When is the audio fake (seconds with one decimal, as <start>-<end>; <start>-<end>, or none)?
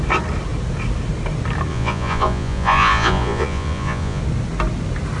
1.7-4.2